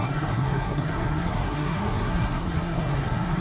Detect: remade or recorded remade